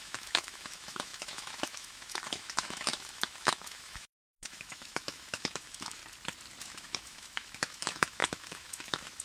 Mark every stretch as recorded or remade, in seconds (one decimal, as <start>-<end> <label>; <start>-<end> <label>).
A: 0.0-6.0 remade; 6.0-6.6 recorded; 6.6-9.2 remade